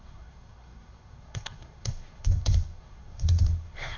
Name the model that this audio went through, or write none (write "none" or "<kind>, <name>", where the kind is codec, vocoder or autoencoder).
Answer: codec, SNAC